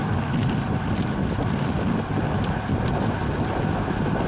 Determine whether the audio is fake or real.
real